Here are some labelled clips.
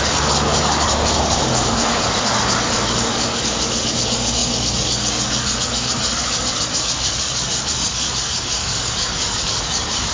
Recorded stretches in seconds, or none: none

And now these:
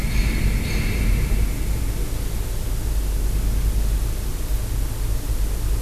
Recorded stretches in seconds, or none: 0.0-5.8

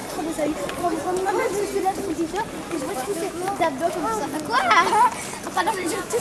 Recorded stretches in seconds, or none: 0.0-2.9; 3.4-3.9; 4.3-5.7

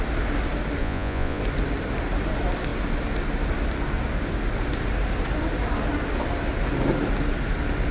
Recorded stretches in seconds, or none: 0.0-0.8; 1.4-7.9

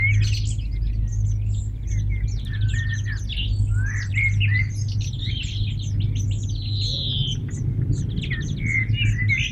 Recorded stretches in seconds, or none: 0.0-9.5

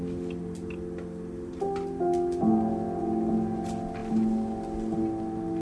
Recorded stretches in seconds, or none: 0.0-5.6

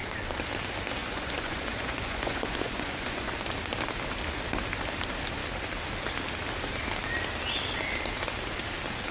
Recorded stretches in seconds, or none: 0.0-1.0; 3.3-9.1

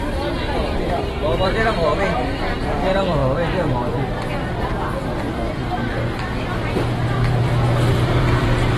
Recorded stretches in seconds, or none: 3.2-4.6; 5.6-7.4